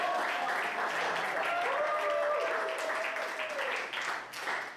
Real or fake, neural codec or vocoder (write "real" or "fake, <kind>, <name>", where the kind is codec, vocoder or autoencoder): real